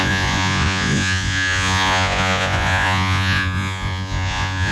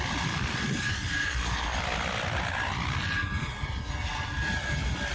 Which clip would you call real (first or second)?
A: second